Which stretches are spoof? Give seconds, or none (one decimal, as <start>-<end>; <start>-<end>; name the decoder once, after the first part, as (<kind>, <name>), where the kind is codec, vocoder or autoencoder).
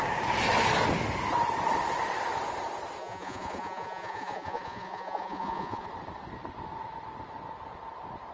3.0-5.9 (vocoder, Vocos)